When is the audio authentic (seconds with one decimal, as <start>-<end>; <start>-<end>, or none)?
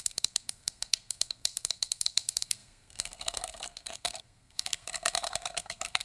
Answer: none